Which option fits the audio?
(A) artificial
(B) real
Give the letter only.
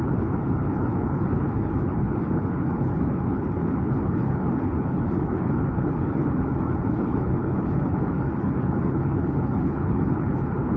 A